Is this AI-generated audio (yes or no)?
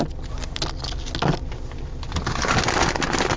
no